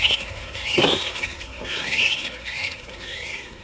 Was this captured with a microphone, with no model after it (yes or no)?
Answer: no